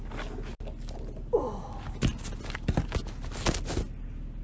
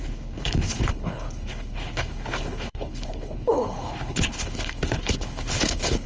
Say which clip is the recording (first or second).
first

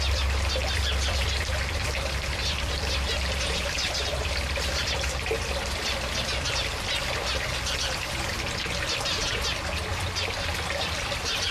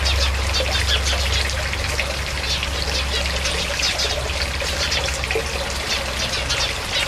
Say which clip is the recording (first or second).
second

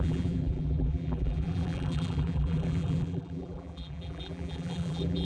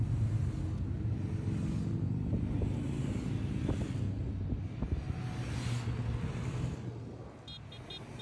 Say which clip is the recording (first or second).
second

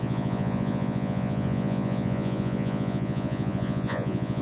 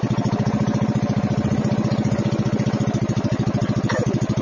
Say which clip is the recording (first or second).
second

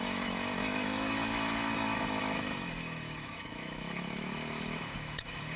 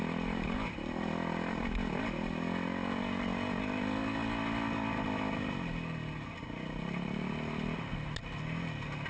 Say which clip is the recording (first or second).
second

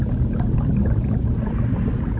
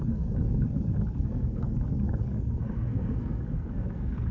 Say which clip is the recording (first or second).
first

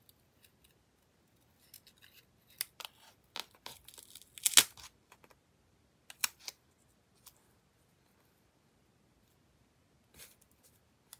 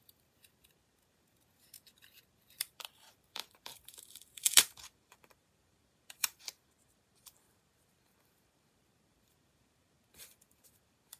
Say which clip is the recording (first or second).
first